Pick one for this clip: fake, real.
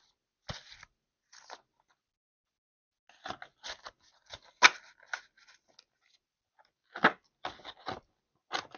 real